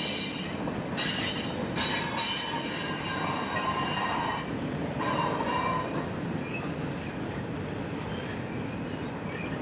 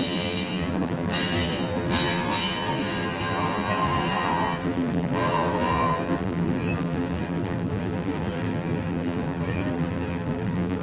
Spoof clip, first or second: second